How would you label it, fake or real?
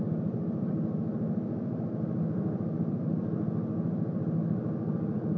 real